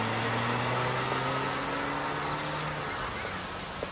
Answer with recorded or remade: recorded